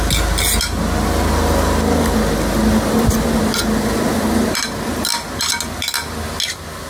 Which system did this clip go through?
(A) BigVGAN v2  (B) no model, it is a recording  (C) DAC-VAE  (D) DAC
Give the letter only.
B